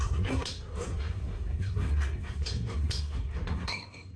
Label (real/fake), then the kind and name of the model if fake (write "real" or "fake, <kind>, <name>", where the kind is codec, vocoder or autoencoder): fake, codec, SNAC